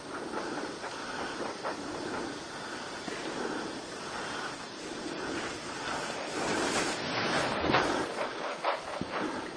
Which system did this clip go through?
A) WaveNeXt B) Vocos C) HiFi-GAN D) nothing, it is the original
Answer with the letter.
D